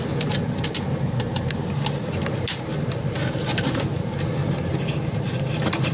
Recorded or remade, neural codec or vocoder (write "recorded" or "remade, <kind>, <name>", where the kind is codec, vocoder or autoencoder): recorded